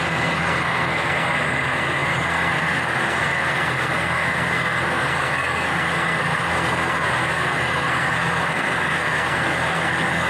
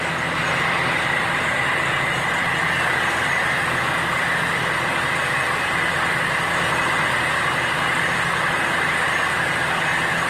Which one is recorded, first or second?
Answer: second